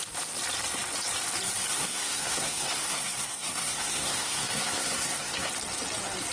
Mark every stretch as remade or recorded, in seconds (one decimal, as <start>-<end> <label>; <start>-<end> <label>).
0.0-1.7 recorded; 1.7-5.5 remade; 5.5-6.3 recorded